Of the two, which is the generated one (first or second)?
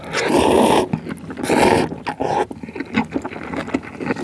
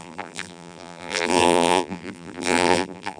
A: second